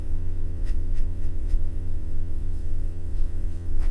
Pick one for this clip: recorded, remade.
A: remade